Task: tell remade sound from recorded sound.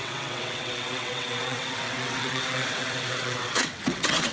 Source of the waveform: remade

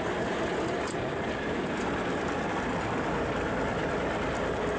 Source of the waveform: recorded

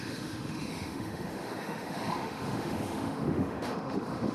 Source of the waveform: remade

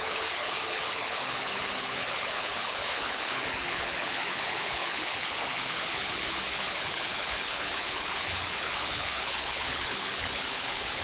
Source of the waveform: remade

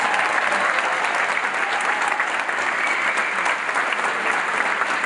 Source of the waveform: recorded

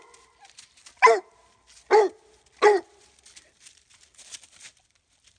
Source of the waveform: recorded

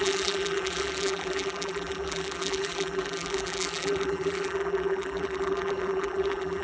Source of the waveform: remade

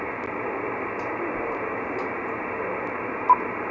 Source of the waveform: recorded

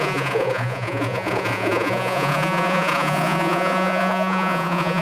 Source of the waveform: remade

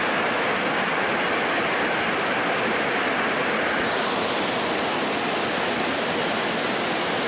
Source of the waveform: recorded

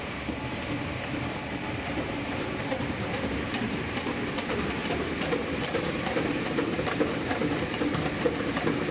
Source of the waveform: remade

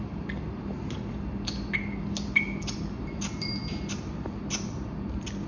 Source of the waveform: recorded